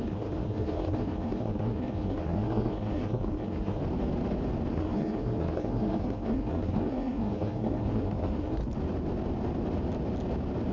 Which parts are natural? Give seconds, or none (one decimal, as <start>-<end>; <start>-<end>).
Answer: 3.8-4.7; 8.6-10.7